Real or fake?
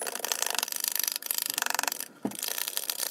fake